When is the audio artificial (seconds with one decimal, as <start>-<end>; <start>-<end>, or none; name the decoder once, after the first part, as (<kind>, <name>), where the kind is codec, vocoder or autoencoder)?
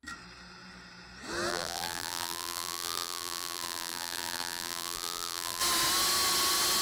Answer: 1.5-5.6 (vocoder, BigVGAN v2)